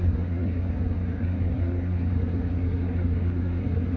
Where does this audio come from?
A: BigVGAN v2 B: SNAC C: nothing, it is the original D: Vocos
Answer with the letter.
B